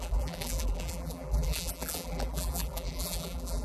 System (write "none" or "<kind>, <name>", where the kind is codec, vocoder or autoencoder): vocoder, BigVGAN v2